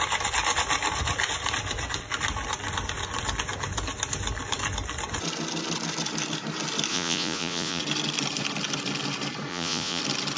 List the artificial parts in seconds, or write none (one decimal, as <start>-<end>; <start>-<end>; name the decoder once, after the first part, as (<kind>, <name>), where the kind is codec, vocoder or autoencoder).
6.9-7.8 (vocoder, Vocos); 9.5-10.0